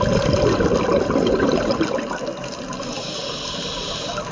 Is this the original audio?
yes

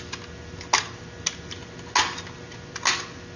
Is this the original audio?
yes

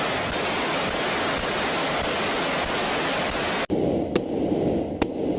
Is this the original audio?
yes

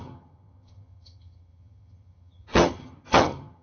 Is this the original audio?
no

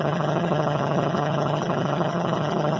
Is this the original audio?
no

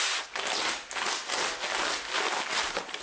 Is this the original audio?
yes